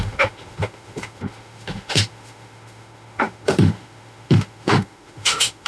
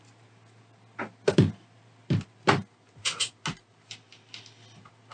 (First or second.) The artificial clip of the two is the first